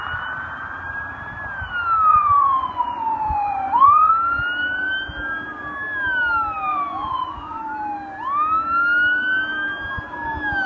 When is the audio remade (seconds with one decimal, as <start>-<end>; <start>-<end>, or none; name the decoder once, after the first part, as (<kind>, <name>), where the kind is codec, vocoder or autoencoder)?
2.1-4.1 (vocoder, Vocos); 6.7-7.6

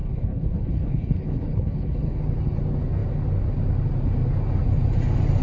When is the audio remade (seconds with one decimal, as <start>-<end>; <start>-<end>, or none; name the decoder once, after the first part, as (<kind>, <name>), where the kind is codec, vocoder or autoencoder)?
0.0-2.2 (codec, HILCodec)

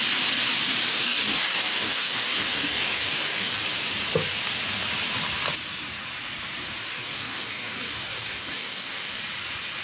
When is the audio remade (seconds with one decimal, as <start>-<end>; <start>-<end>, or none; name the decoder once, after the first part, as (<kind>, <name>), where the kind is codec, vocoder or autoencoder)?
0.9-3.6 (codec, DAC); 6.9-9.2

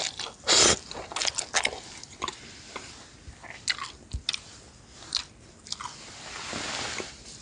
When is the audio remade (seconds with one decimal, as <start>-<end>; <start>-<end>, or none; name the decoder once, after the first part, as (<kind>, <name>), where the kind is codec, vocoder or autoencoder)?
none

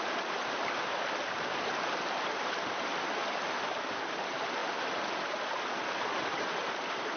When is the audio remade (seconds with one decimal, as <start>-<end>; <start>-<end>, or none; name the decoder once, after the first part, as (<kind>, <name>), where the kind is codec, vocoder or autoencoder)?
0.0-7.2 (vocoder, BigVGAN v2)

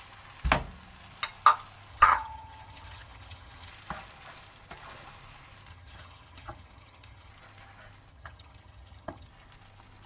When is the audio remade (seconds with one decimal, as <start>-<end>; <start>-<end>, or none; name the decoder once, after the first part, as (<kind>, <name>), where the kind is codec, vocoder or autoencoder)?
1.9-3.7 (vocoder, HiFi-GAN); 5.7-7.3; 8.1-9.3

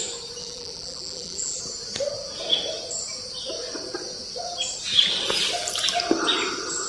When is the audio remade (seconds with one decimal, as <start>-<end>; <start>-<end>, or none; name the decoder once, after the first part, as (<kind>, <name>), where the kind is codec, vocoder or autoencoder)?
0.4-1.6 (vocoder, BigVGAN v2)